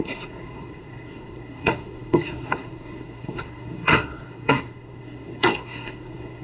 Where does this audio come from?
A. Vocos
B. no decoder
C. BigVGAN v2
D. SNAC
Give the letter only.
D